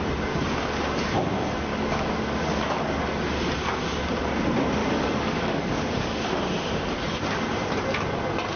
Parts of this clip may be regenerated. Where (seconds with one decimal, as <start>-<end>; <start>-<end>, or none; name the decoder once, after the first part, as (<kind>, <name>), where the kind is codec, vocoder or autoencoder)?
1.7-3.0 (codec, DAC); 4.8-6.3